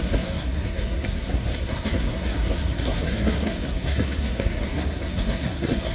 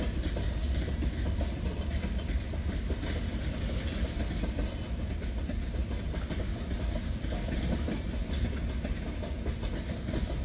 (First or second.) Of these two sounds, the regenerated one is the first